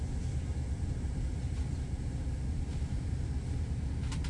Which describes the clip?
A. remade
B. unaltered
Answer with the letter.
B